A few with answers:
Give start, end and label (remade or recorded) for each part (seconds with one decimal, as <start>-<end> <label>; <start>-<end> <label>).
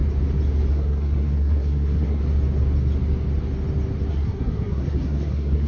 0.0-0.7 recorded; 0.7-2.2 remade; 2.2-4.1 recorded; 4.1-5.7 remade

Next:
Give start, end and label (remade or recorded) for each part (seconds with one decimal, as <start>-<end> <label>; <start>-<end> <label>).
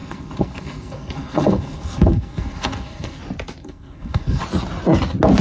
0.0-3.2 remade; 3.2-3.6 recorded; 3.6-4.4 remade; 4.4-5.4 recorded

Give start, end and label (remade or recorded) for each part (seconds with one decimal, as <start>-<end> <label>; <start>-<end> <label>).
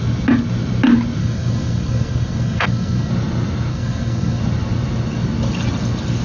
0.0-1.2 recorded; 1.2-3.1 remade; 3.1-3.7 recorded; 3.7-4.4 remade; 4.4-6.2 recorded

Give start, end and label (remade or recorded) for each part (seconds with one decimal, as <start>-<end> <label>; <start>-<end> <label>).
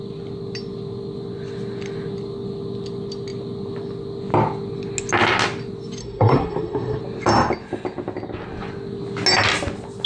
0.0-6.0 recorded; 6.0-7.0 remade; 7.0-10.1 recorded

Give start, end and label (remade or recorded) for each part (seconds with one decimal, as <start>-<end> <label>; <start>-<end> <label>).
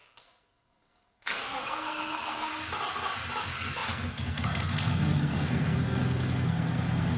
0.0-2.5 remade; 2.5-3.4 recorded; 3.4-7.2 remade